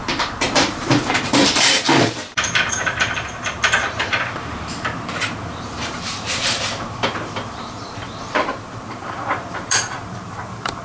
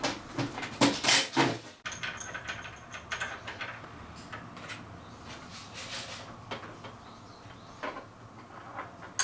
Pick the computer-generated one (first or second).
first